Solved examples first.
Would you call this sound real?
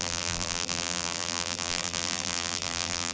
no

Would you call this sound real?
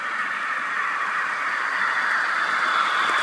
no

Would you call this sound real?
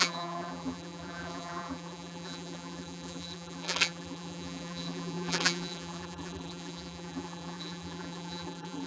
no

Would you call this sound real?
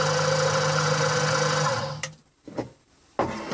yes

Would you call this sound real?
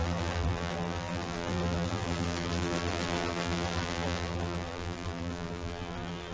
no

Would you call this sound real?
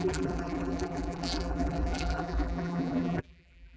no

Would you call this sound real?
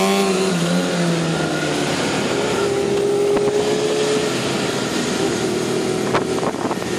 yes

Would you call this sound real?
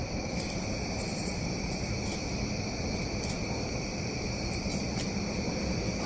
no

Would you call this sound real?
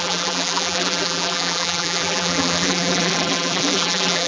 no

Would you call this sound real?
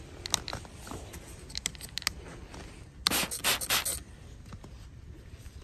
yes